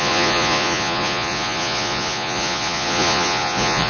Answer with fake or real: fake